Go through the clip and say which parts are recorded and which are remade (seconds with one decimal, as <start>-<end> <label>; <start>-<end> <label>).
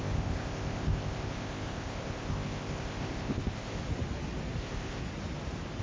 0.0-3.8 remade; 3.8-4.6 recorded; 4.6-5.0 remade; 5.0-5.8 recorded